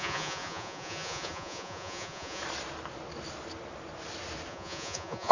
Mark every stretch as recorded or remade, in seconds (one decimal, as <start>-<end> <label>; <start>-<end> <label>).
0.0-2.4 remade; 2.4-4.5 recorded; 4.5-5.3 remade